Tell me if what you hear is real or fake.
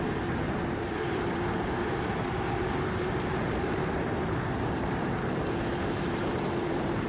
fake